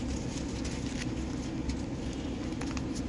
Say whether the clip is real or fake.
real